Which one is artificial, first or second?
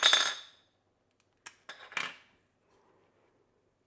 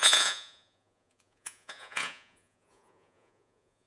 second